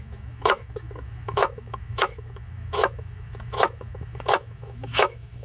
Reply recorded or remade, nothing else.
remade